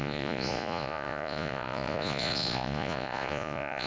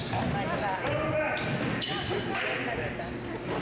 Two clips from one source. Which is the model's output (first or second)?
first